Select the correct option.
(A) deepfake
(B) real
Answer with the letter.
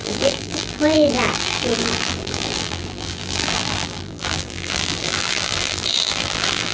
A